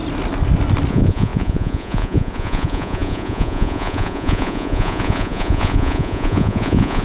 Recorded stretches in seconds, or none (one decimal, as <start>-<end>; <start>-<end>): 0.0-0.9